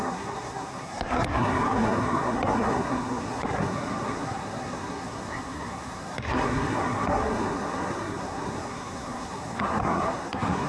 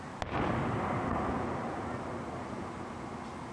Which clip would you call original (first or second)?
second